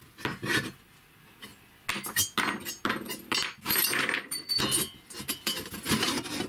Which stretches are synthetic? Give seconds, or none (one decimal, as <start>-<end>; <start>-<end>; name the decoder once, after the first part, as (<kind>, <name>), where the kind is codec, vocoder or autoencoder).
none